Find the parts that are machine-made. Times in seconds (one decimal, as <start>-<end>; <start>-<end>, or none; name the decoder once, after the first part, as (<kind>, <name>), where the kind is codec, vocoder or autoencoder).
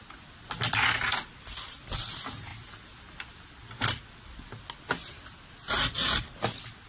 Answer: none